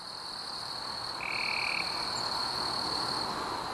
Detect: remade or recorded recorded